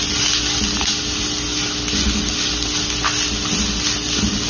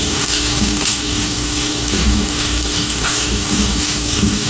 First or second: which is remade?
second